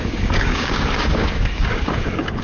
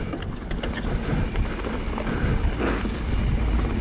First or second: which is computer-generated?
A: first